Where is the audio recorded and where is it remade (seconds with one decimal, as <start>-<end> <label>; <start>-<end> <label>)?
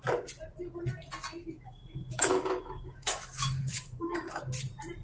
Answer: 0.0-1.4 recorded; 1.4-4.4 remade; 4.4-5.0 recorded